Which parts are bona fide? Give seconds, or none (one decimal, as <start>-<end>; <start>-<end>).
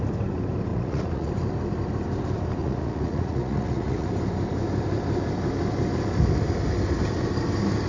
0.0-0.7; 1.3-2.6; 4.1-7.9